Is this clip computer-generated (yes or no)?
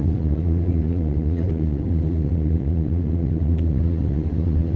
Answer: yes